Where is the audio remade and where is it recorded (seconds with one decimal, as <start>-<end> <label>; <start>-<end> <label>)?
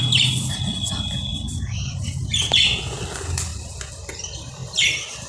0.0-1.3 recorded; 1.3-3.0 remade; 3.0-3.5 recorded; 3.5-4.1 remade; 4.1-4.6 recorded; 4.6-5.3 remade